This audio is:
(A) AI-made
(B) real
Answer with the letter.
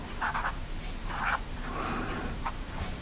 A